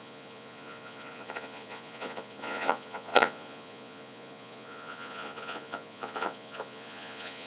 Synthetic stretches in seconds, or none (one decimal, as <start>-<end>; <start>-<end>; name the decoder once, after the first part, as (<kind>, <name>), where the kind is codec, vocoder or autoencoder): 0.0-7.5 (vocoder, Vocos)